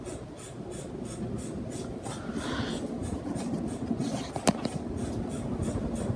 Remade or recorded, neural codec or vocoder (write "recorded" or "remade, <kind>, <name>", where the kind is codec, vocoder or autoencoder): recorded